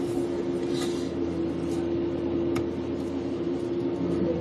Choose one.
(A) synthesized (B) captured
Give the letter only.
B